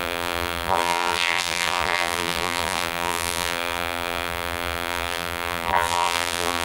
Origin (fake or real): fake